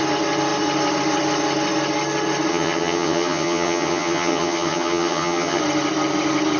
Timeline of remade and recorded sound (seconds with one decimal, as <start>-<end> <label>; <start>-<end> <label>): 0.0-2.5 recorded; 2.5-5.6 remade; 5.6-6.6 recorded